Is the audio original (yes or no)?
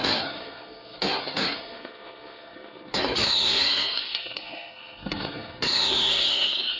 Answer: no